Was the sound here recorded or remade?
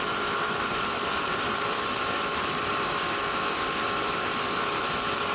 remade